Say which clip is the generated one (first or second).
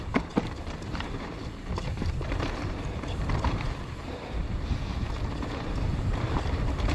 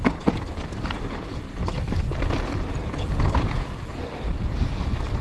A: first